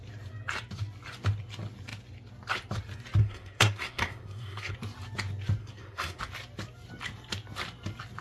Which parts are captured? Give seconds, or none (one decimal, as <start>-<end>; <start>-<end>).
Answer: 0.0-3.2; 4.7-5.6; 6.2-8.2